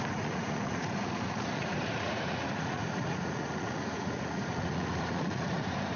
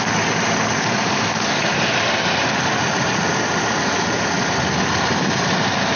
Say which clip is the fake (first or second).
first